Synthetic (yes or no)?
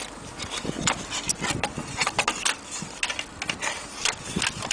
no